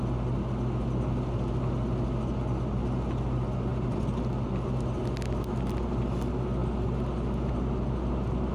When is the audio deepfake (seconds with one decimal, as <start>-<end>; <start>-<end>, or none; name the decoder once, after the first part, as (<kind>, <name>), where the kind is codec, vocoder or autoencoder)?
none